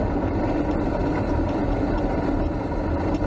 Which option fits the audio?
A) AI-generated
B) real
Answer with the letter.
B